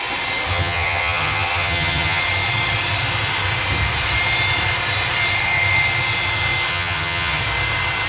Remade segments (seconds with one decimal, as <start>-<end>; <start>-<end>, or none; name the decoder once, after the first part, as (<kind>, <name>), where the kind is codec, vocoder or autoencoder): 0.5-2.2 (vocoder, HiFi-GAN); 6.7-7.4